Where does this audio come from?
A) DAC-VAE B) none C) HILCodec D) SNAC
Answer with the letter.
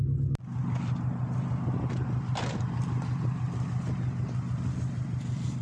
B